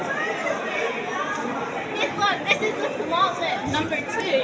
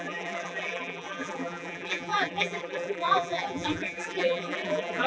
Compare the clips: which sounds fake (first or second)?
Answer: second